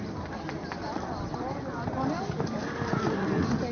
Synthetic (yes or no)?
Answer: no